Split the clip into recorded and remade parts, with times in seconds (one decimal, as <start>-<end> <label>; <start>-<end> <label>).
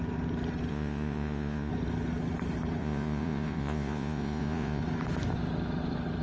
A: 0.0-0.7 recorded; 0.7-1.7 remade; 1.7-2.8 recorded; 2.8-4.8 remade; 4.8-6.2 recorded